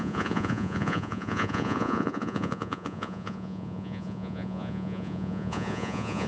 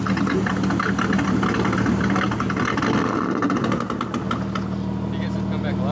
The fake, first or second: first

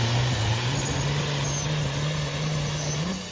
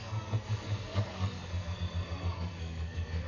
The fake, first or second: second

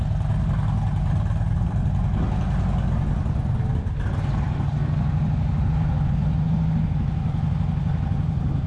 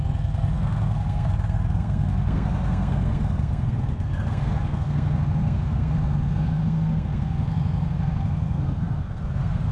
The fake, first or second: second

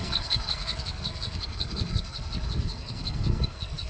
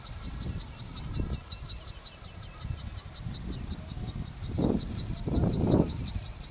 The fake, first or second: first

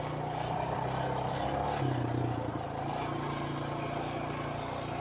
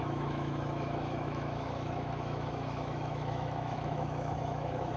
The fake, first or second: second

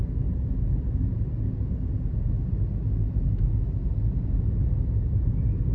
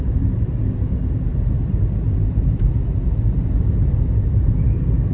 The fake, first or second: second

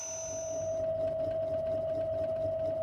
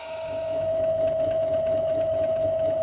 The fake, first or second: second